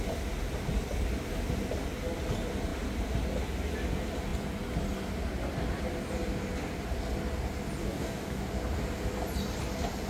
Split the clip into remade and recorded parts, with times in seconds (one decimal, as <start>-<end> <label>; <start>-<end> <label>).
0.0-7.8 recorded; 7.8-8.4 remade; 8.4-10.1 recorded